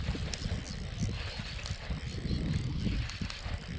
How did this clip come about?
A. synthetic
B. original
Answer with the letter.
B